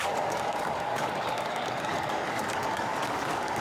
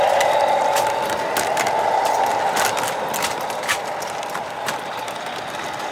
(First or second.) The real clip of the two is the second